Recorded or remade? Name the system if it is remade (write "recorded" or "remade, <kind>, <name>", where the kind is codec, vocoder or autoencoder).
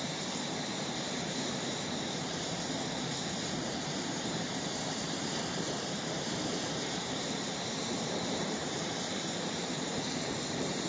remade, vocoder, BigVGAN v2